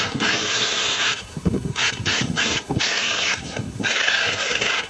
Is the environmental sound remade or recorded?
remade